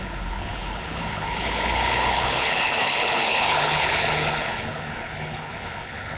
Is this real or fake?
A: fake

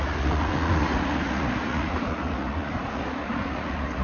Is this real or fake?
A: fake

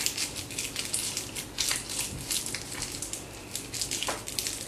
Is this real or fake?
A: real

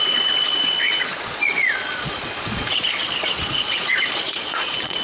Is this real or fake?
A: fake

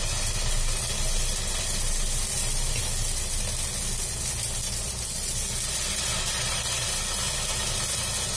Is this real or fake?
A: real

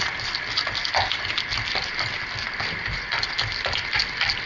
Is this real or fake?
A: real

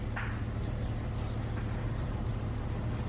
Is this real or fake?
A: real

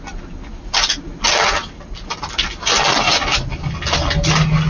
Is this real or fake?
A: real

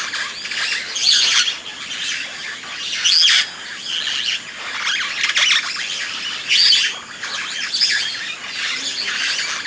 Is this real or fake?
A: real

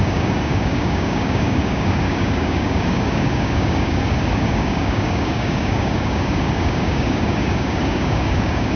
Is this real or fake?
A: fake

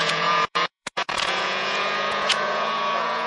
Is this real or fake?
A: fake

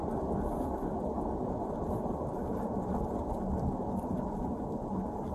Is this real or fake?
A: real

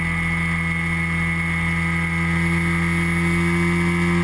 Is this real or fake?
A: real